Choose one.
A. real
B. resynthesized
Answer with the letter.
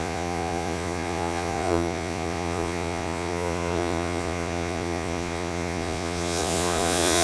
B